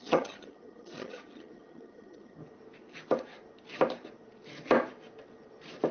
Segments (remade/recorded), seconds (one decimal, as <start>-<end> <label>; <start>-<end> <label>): 0.0-2.4 remade; 2.4-5.9 recorded

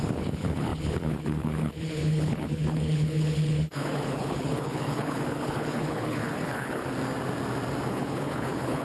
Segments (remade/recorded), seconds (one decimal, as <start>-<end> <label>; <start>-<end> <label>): 0.0-6.8 remade; 6.8-7.9 recorded; 7.9-8.8 remade